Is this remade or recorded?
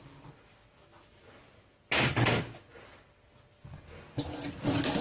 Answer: recorded